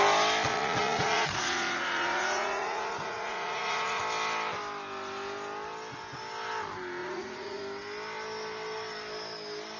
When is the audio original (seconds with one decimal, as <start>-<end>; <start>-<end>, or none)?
0.0-0.5; 4.0-7.0; 7.6-9.8